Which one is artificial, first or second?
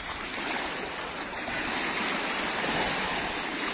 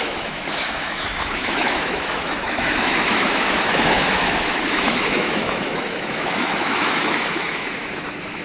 second